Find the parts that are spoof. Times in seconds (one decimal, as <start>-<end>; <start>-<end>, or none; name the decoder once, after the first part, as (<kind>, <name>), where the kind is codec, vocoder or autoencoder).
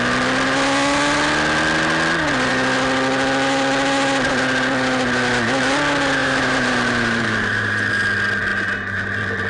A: 6.2-7.9 (vocoder, BigVGAN v2)